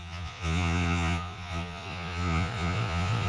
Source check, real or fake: fake